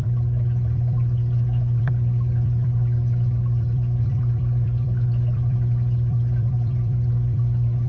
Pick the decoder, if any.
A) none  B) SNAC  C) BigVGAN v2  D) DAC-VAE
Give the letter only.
C